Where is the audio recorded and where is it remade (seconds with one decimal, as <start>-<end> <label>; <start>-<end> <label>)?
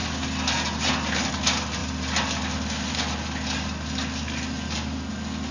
0.0-5.5 recorded